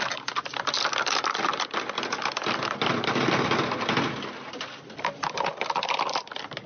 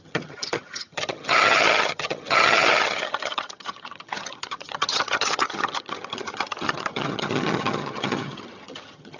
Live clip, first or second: first